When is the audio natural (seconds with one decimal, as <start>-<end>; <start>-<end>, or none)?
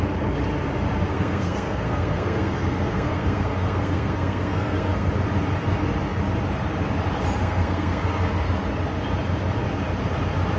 0.0-1.1; 5.1-7.4; 8.3-10.6